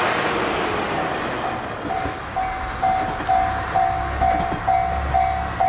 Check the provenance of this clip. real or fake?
real